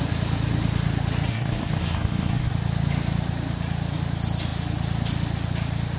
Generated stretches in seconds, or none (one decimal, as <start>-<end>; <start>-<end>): 1.3-2.5